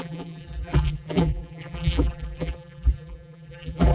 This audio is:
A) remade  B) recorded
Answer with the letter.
A